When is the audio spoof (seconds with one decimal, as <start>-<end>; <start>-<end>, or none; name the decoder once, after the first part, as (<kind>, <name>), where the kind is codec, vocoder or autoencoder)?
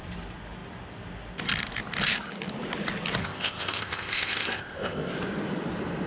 3.2-5.1 (codec, ZipCodec)